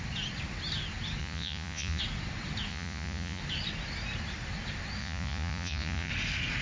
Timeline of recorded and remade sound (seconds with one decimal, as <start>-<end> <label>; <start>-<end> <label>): 0.0-1.2 recorded; 1.2-2.0 remade; 2.0-2.7 recorded; 2.7-3.4 remade; 3.4-5.0 recorded; 5.0-6.1 remade; 6.1-6.6 recorded